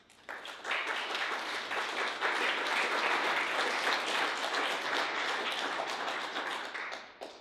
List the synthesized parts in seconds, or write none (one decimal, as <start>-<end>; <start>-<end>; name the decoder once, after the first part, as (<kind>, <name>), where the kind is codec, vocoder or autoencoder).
none